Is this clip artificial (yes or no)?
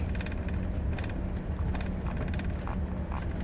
no